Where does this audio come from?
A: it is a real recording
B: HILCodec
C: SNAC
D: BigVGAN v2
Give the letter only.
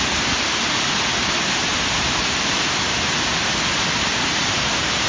D